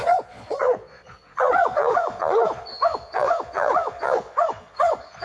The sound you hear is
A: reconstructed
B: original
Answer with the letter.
A